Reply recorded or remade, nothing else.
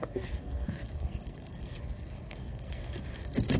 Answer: remade